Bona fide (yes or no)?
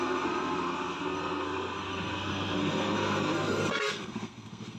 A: no